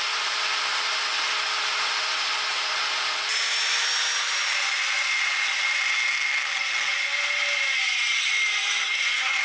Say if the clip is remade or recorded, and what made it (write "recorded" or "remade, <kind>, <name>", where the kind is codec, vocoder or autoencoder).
recorded